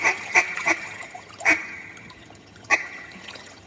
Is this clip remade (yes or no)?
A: yes